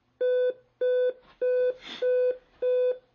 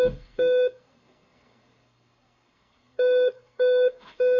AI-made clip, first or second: second